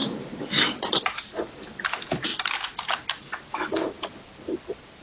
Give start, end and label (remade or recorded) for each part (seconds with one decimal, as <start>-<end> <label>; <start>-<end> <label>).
0.0-5.0 recorded